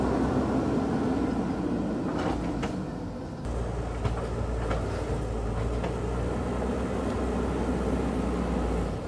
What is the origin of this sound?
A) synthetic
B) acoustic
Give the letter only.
B